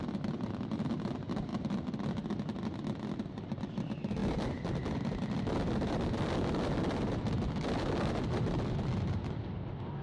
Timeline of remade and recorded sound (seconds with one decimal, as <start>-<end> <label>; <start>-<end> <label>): 0.0-10.0 recorded